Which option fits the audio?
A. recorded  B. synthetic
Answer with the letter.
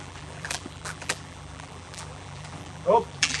B